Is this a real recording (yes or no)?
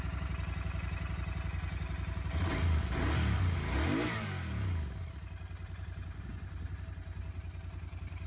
yes